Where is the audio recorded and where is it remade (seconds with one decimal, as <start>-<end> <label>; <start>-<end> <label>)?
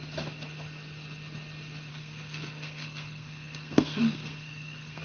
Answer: 0.0-1.9 recorded; 1.9-5.0 remade